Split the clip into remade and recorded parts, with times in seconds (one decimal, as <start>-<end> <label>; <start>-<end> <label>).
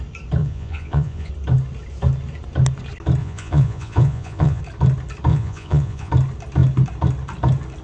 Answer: 0.0-0.4 recorded; 0.4-1.3 remade; 1.3-3.2 recorded; 3.2-4.6 remade; 4.6-5.3 recorded; 5.3-6.1 remade; 6.1-7.8 recorded